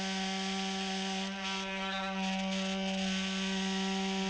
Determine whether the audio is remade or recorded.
recorded